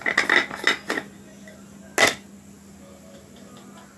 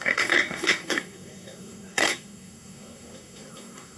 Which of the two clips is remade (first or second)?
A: second